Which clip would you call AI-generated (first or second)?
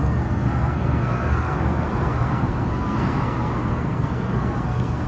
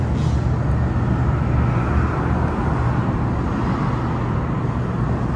first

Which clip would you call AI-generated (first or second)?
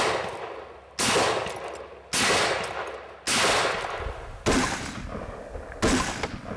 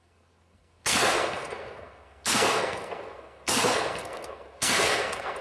second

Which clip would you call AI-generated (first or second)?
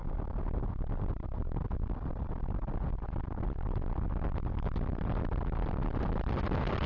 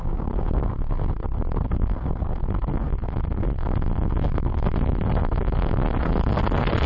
second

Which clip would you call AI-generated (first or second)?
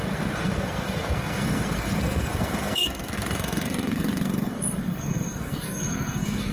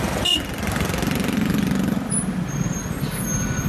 first